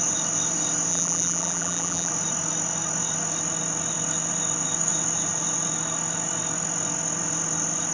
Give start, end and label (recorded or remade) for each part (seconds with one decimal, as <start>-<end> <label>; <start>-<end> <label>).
0.0-0.9 recorded; 0.9-2.1 remade; 2.1-7.9 recorded